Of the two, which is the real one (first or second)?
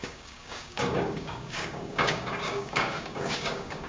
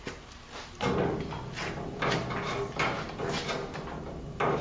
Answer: second